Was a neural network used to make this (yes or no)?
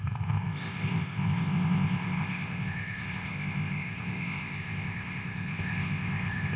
yes